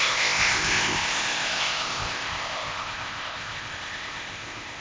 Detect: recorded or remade remade